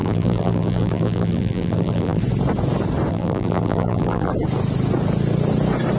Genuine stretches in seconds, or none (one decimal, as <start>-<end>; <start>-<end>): 2.2-3.1; 4.3-6.0